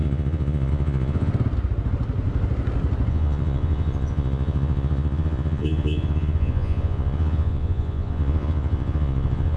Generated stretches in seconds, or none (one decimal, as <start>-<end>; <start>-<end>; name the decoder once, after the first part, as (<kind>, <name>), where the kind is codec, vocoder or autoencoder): 0.0-1.3 (vocoder, Vocos); 3.1-9.6